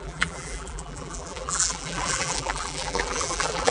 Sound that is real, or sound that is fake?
fake